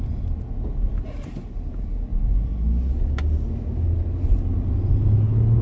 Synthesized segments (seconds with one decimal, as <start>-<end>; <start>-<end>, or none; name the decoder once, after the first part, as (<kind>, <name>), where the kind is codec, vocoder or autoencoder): none